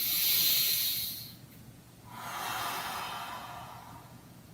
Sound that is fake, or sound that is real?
fake